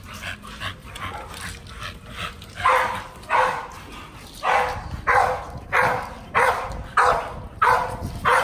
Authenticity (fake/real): real